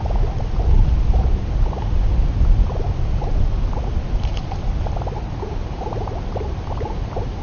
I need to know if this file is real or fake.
real